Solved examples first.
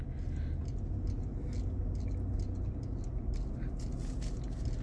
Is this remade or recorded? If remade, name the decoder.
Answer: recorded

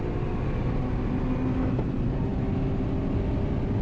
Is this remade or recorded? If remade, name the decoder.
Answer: recorded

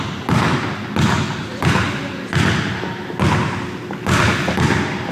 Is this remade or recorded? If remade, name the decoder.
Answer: recorded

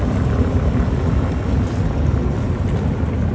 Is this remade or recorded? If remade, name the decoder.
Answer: recorded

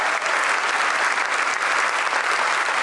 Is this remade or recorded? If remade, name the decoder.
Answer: recorded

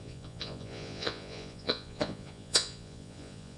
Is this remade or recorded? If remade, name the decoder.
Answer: remade, vocoder, Vocos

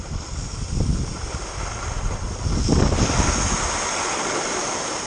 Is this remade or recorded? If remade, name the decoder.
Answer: recorded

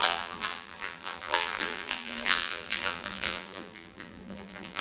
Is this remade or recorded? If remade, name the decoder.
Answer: remade, vocoder, BigVGAN v2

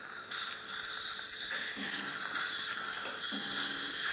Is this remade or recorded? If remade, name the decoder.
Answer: recorded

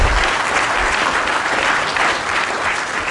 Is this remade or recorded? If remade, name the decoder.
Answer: recorded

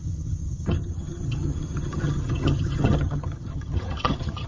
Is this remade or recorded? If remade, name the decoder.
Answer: remade, vocoder, HiFi-GAN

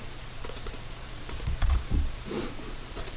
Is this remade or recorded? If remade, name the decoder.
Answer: remade, vocoder, Vocos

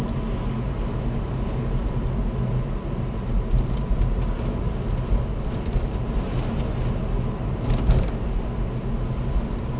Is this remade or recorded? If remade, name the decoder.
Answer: recorded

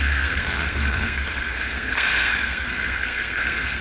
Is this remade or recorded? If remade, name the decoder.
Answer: remade, codec, SNAC